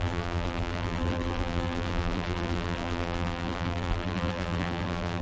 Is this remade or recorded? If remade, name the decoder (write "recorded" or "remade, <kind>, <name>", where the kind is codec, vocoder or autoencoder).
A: remade, vocoder, BigVGAN v2